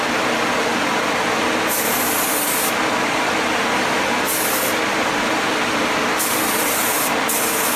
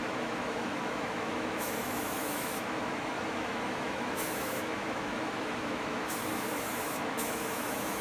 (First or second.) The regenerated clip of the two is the second